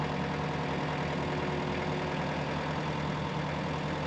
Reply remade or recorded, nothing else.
recorded